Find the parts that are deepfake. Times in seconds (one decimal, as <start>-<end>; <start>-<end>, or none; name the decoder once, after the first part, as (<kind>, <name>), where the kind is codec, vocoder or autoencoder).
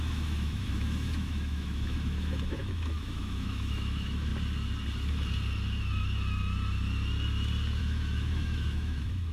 0.0-4.3 (autoencoder, DAC-VAE); 7.8-9.3